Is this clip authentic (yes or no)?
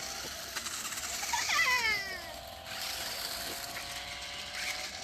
no